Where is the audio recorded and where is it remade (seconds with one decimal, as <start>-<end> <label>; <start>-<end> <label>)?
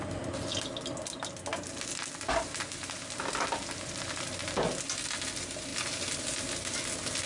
0.0-7.3 recorded